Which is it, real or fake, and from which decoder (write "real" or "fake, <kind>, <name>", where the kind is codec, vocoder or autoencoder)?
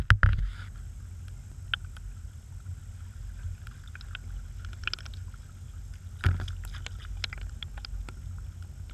real